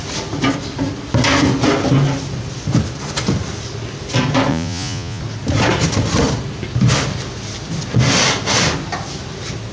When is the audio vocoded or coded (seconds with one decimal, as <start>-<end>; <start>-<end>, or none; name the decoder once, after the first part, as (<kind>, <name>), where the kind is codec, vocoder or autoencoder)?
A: 4.5-5.2 (vocoder, Vocos)